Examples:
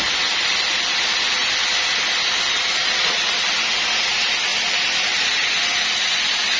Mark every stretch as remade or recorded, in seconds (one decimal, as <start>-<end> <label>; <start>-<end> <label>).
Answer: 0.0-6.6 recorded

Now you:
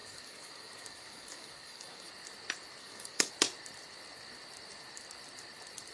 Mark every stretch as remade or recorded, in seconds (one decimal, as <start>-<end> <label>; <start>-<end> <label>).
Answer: 0.0-2.1 remade; 2.1-2.8 recorded; 2.8-3.3 remade; 3.3-5.9 recorded

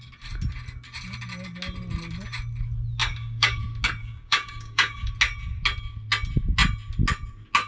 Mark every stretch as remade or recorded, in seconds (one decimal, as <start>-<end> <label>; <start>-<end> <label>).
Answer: 0.0-3.0 recorded; 3.0-3.6 remade; 3.6-4.0 recorded; 4.0-5.1 remade; 5.1-7.7 recorded

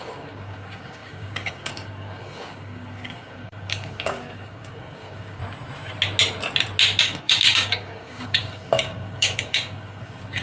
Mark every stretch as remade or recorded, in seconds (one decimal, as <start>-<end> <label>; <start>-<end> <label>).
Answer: 0.0-5.4 remade; 5.4-7.0 recorded; 7.0-10.4 remade